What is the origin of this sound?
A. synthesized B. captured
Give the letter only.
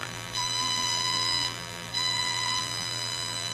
A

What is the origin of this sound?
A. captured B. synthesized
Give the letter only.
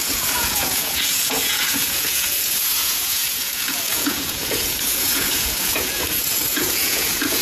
B